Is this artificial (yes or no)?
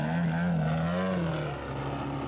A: no